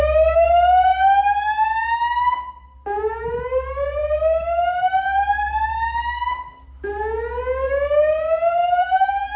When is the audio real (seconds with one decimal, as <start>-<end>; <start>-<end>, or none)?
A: 0.0-8.6